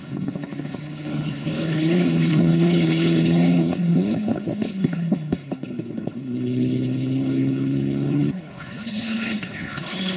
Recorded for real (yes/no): no